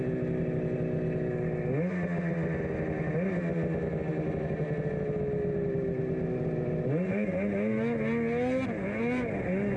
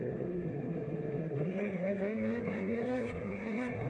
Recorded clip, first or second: first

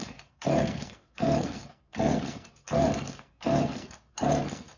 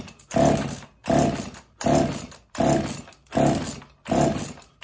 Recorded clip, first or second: second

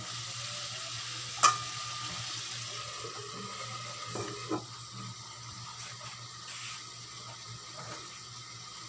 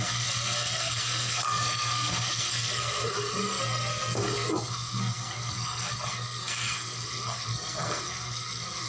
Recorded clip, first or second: first